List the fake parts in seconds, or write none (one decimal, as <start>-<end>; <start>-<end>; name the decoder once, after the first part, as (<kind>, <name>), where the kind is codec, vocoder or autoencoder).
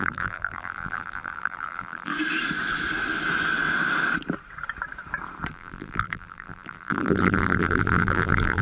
0.0-2.1 (vocoder, BigVGAN v2); 5.5-8.6